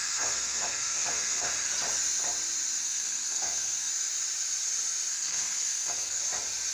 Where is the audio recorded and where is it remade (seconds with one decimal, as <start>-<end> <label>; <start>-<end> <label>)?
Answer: 0.0-1.5 remade; 1.5-2.8 recorded; 2.8-3.9 remade; 3.9-5.1 recorded; 5.1-6.2 remade; 6.2-6.7 recorded